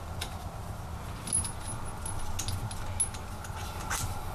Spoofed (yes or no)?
no